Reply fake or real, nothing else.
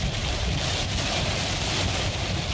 real